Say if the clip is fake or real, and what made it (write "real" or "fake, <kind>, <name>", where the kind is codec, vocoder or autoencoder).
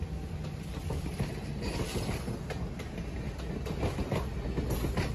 real